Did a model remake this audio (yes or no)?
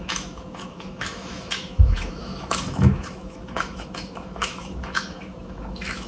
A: yes